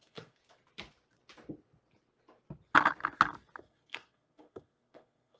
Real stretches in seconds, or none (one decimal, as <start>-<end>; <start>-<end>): 0.4-3.6